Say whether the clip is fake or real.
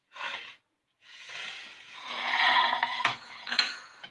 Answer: fake